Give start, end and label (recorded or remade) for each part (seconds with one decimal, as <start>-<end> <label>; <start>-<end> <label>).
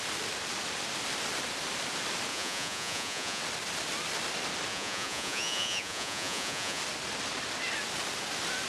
0.0-2.3 recorded; 2.3-3.4 remade; 3.4-4.7 recorded; 4.7-6.8 remade; 6.8-8.7 recorded